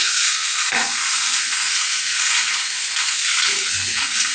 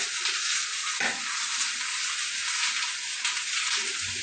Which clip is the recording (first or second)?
second